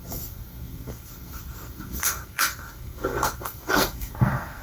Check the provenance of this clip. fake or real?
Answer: fake